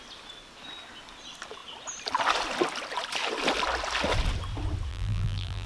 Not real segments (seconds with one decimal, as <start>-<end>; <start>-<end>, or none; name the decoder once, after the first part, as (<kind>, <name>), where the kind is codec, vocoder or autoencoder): 4.9-5.7 (vocoder, BigVGAN v2)